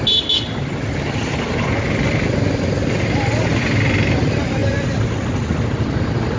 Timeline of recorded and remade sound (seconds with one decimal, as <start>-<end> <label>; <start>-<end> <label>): 0.0-6.4 recorded